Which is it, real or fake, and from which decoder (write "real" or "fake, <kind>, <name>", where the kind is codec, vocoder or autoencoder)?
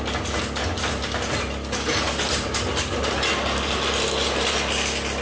real